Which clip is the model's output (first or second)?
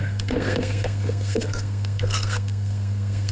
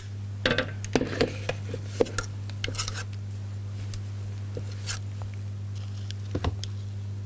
first